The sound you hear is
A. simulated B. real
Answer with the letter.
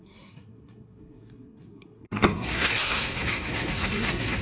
A